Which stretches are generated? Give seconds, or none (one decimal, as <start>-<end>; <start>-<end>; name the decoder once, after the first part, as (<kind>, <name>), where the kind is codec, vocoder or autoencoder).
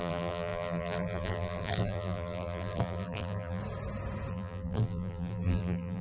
0.0-3.6 (vocoder, BigVGAN v2); 4.3-6.0